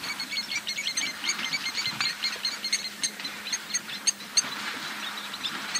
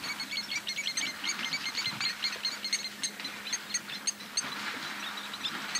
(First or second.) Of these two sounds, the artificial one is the first